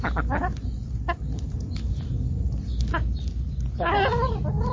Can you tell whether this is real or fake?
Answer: real